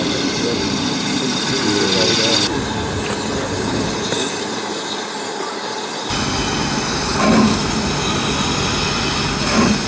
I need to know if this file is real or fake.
real